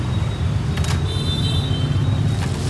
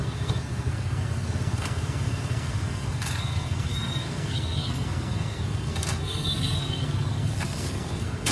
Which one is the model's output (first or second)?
second